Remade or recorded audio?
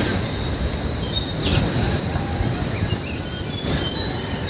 recorded